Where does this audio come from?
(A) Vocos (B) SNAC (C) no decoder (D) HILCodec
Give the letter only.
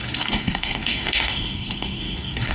B